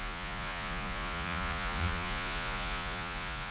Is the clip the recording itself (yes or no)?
no